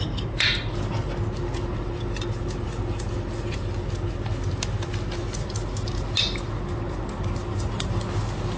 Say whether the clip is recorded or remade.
recorded